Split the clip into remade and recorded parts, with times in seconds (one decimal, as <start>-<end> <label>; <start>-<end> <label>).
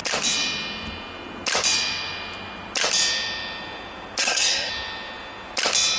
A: 0.0-4.2 recorded; 4.2-4.7 remade; 4.7-6.0 recorded